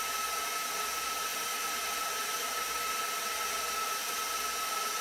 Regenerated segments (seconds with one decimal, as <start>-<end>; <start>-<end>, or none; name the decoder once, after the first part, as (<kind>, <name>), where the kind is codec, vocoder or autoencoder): 1.3-4.2 (vocoder, BigVGAN v2)